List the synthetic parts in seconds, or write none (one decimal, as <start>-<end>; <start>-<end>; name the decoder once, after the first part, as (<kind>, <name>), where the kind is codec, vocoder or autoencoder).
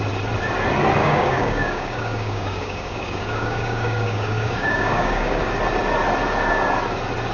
1.0-5.4 (codec, DAC)